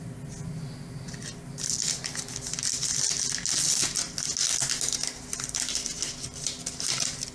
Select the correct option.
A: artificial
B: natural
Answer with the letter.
B